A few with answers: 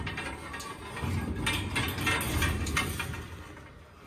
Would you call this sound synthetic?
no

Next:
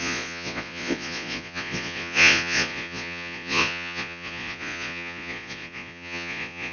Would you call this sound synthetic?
yes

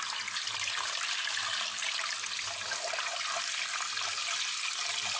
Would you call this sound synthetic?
no